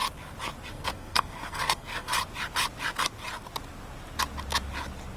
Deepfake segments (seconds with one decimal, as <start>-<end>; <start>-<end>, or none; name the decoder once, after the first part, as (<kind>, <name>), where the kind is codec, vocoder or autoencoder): 0.7-2.1 (codec, SNAC)